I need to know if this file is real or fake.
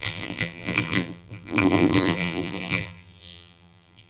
fake